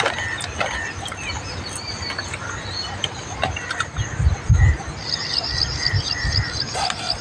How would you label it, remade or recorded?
recorded